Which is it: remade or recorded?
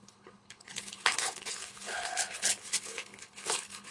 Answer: remade